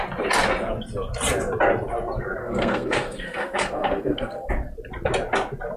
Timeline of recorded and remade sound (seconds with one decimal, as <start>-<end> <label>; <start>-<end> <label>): 0.0-2.4 recorded; 2.4-4.5 remade; 4.5-5.8 recorded